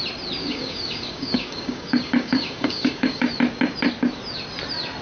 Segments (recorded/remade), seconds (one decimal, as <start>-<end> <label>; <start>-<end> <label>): 0.0-0.4 recorded; 0.4-3.3 remade; 3.3-5.0 recorded